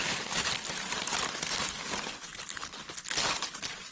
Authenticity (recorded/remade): recorded